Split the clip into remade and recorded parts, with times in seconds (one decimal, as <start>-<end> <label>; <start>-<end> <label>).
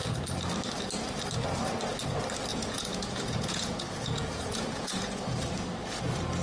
0.0-2.5 recorded; 2.5-5.2 remade; 5.2-6.4 recorded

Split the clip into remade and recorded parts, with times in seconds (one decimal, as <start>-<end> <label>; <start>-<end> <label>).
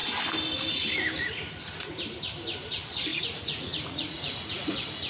0.0-3.1 recorded; 3.1-5.1 remade